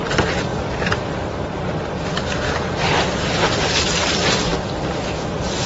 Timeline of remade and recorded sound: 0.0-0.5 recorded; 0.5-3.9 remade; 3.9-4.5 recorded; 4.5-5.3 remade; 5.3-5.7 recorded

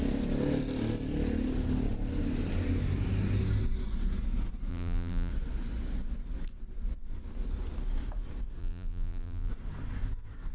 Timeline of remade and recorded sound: 0.0-4.7 recorded; 4.7-5.3 remade; 5.3-8.6 recorded; 8.6-9.5 remade; 9.5-10.5 recorded

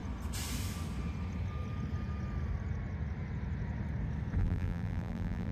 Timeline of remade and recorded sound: 0.0-4.4 recorded; 4.4-5.5 remade

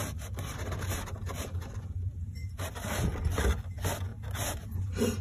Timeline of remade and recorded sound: 0.0-3.1 remade; 3.1-4.1 recorded; 4.1-5.2 remade